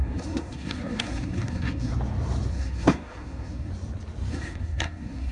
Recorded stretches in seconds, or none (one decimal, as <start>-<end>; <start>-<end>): 1.9-2.5; 3.7-4.3